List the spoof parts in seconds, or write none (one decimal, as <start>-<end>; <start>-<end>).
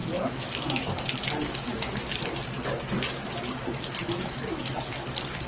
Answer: 0.0-0.9; 1.4-2.1; 4.0-4.7